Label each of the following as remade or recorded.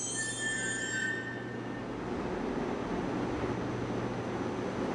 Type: recorded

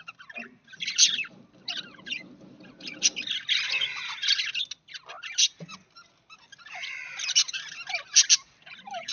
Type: recorded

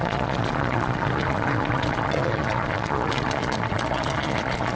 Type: remade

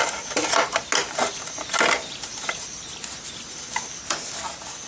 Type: recorded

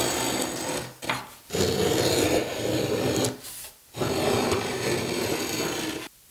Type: recorded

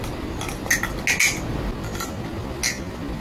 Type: recorded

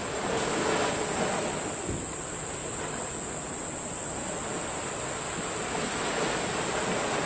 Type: recorded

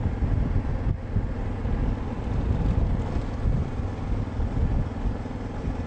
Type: recorded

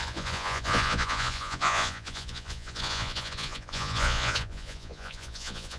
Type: remade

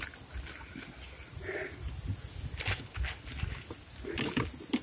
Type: recorded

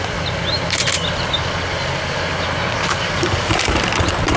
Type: recorded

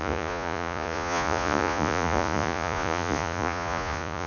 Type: remade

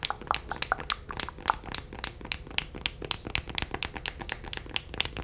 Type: recorded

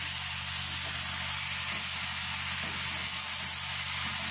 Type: recorded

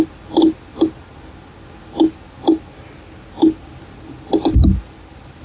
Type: recorded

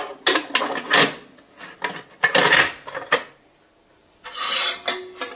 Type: recorded